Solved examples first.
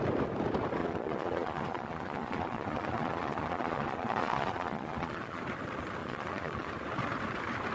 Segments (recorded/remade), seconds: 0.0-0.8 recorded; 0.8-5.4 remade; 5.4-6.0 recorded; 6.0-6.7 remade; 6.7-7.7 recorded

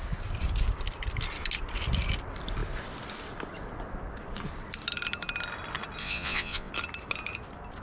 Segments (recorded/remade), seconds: 0.0-6.0 recorded; 6.0-6.7 remade; 6.7-7.8 recorded

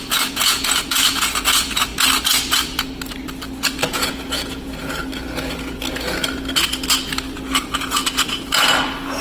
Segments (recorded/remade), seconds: 0.0-1.9 remade; 1.9-3.9 recorded; 3.9-5.0 remade; 5.0-7.6 recorded; 7.6-9.2 remade

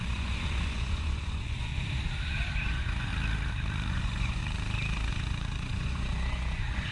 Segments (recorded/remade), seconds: 0.0-1.7 remade; 1.7-2.7 recorded; 2.7-3.1 remade; 3.1-3.9 recorded; 3.9-4.4 remade; 4.4-5.1 recorded; 5.1-6.9 remade

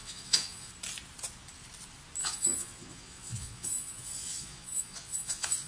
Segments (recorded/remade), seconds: 0.0-0.7 remade; 0.7-2.2 recorded; 2.2-5.7 remade